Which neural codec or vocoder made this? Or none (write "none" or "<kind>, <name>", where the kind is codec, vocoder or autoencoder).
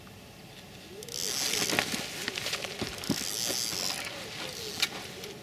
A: none